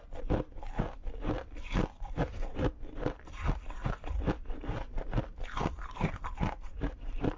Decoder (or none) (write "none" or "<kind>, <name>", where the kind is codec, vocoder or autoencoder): none